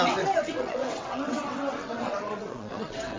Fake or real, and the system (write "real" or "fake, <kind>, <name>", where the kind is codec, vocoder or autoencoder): fake, vocoder, WaveNeXt